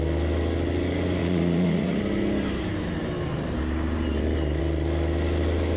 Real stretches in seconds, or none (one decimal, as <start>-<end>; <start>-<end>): 0.0-1.2; 2.0-5.8

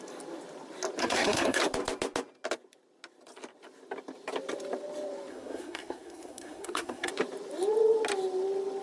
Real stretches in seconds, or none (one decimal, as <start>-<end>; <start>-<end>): 0.0-1.0; 1.6-5.3; 7.1-8.8

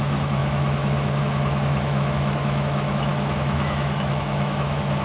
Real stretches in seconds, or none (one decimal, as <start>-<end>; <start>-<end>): none

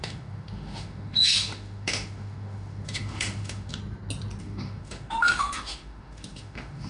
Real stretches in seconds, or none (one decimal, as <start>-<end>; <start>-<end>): 3.8-4.4

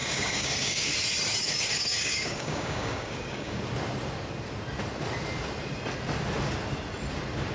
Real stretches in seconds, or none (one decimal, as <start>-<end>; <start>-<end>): 0.9-1.4; 3.6-7.5

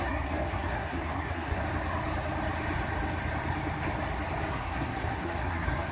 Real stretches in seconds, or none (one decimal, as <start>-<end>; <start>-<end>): 1.6-4.5